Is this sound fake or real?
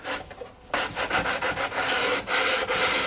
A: real